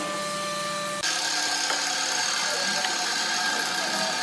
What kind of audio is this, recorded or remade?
recorded